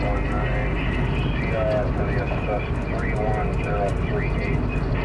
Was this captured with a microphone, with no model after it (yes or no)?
yes